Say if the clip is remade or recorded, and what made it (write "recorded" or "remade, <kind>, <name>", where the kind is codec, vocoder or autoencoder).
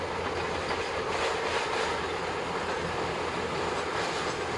recorded